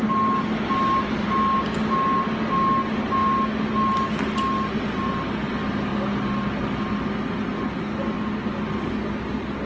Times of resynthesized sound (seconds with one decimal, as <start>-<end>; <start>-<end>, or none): none